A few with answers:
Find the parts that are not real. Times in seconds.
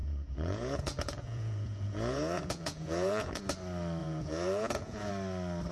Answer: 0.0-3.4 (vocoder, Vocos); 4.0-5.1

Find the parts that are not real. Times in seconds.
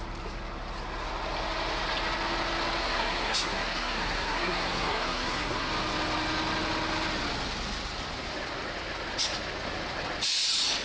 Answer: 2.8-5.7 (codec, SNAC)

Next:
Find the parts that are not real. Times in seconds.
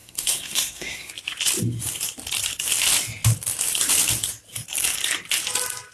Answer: 0.0-1.1 (codec, SNAC)